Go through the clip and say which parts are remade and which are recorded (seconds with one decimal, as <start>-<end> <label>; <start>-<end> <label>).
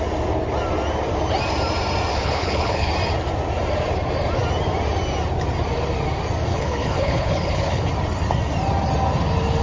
0.0-2.1 recorded; 2.1-2.9 remade; 2.9-6.5 recorded; 6.5-7.9 remade; 7.9-9.6 recorded